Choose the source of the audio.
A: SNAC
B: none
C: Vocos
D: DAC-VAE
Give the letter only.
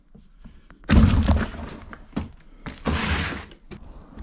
B